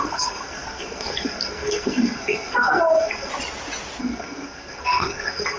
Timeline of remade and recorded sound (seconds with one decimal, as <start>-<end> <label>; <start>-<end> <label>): 0.0-3.3 remade; 3.3-4.0 recorded; 4.0-5.6 remade